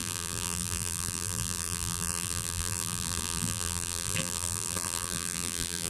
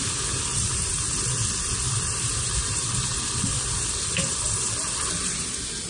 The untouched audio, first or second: second